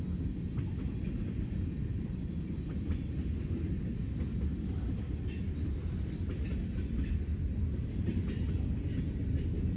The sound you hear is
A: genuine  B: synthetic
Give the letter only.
A